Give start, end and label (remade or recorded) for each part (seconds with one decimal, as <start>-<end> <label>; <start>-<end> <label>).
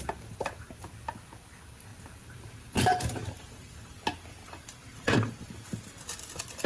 0.0-1.9 recorded; 1.9-4.0 remade; 4.0-4.4 recorded; 4.4-5.8 remade; 5.8-6.7 recorded